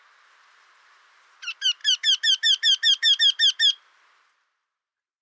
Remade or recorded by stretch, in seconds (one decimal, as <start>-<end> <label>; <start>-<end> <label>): 0.0-5.2 recorded